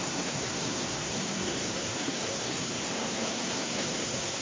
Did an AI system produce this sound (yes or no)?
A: yes